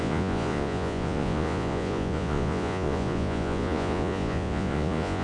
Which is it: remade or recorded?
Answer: remade